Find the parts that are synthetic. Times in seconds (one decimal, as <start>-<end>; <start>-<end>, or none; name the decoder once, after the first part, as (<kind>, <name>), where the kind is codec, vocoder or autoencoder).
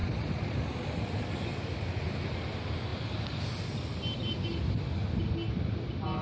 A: 0.0-0.5 (vocoder, BigVGAN v2)